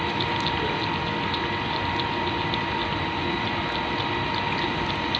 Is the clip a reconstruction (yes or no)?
no